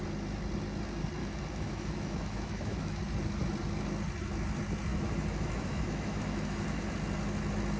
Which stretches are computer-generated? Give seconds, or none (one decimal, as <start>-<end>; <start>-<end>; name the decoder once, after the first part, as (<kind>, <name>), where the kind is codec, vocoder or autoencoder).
1.2-3.0 (autoencoder, DAC-VAE); 4.9-6.8